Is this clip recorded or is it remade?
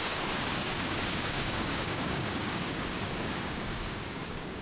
remade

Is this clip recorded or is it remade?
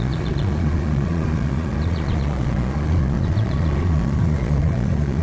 remade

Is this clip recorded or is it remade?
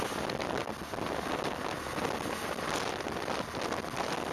recorded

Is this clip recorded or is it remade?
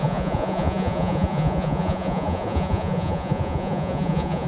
remade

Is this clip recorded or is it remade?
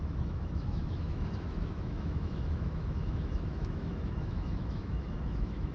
remade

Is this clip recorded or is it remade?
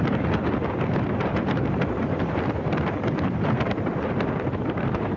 remade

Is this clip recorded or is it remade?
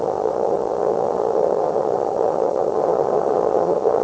remade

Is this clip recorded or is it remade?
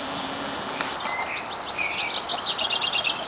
recorded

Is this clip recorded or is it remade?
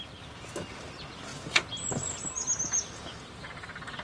recorded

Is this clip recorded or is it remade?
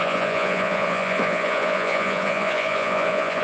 remade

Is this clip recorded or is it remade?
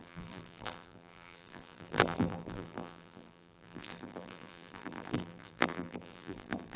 remade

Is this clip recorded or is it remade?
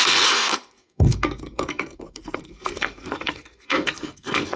remade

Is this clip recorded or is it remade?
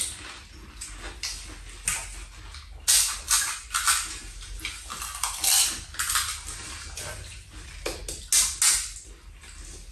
recorded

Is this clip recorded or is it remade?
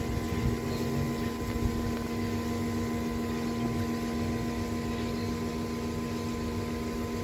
recorded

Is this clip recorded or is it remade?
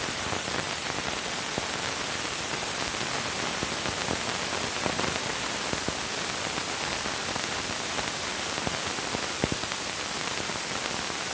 recorded